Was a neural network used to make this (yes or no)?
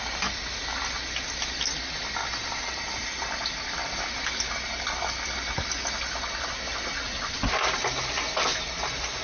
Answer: no